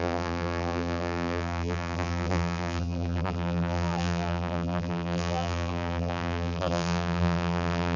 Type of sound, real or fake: fake